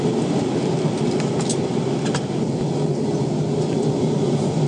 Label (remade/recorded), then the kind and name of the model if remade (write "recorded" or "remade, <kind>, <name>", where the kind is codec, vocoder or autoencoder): recorded